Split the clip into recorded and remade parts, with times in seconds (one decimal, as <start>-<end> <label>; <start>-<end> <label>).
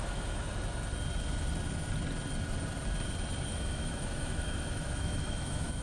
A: 0.0-0.5 remade; 0.5-3.5 recorded; 3.5-5.8 remade